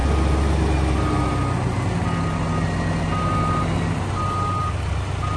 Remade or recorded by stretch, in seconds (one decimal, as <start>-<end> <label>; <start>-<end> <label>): 0.0-5.4 recorded

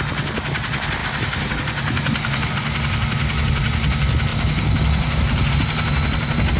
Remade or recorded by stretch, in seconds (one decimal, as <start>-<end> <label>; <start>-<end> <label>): 0.0-1.0 recorded; 1.0-2.5 remade; 2.5-4.3 recorded; 4.3-5.5 remade; 5.5-6.6 recorded

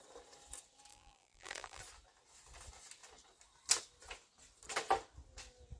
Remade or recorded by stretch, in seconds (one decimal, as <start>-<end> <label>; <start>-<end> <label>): 0.0-0.9 recorded; 0.9-1.8 remade; 1.8-5.8 recorded

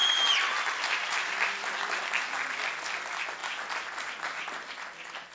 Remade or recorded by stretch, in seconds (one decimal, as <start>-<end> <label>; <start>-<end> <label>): 0.0-2.0 remade; 2.0-5.3 recorded

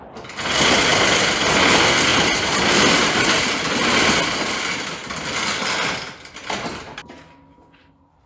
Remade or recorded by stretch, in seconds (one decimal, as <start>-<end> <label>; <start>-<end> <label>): 0.0-2.1 recorded; 2.1-3.5 remade; 3.5-8.3 recorded

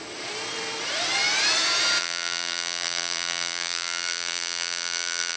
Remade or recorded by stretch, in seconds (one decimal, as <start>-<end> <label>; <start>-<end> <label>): 0.0-2.0 recorded; 2.0-5.4 remade

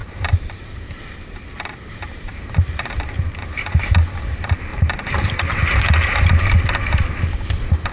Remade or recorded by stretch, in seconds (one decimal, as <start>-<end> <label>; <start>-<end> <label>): 0.0-3.9 remade; 3.9-4.7 recorded; 4.7-6.3 remade; 6.3-7.9 recorded

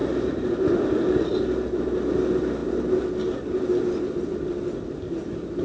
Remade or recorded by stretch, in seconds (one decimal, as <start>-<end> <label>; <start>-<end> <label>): 0.0-0.5 remade; 0.5-5.6 recorded